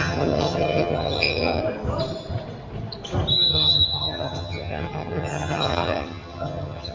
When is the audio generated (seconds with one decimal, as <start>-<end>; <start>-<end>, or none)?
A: 0.0-1.6; 3.5-6.9

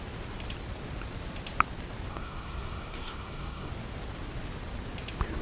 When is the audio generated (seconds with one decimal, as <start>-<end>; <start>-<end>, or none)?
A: 2.1-3.7

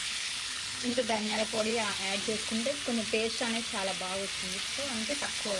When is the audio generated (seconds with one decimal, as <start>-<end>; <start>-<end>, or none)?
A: 0.0-1.7; 5.1-5.6